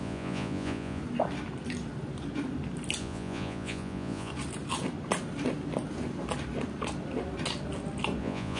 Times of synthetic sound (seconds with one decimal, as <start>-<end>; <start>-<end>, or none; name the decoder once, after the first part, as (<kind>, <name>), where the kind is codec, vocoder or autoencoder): 0.0-1.0 (vocoder, Vocos); 3.0-4.3; 8.2-8.6